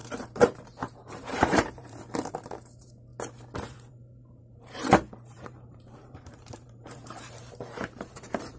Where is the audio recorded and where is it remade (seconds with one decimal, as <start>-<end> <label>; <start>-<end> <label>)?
0.0-3.1 remade; 3.1-3.7 recorded; 3.7-8.6 remade